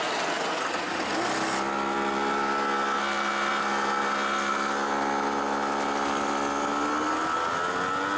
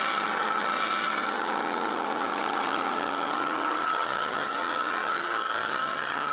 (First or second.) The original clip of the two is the first